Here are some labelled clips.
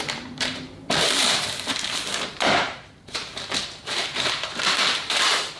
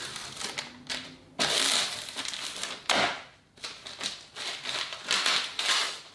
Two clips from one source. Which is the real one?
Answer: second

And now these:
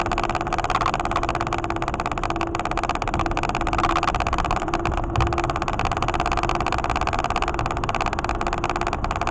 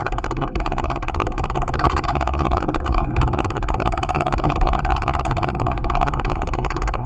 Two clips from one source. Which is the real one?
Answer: first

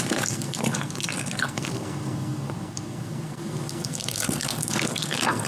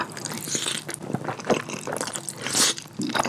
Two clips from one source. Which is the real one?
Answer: second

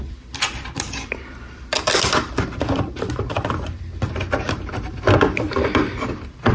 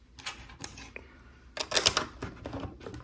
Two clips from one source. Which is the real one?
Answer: second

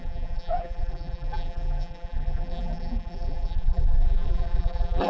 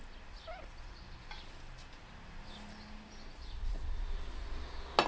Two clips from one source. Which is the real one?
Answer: second